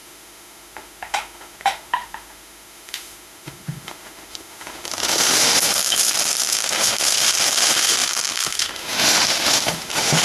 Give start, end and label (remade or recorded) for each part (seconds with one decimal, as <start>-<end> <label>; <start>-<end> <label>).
0.0-10.2 remade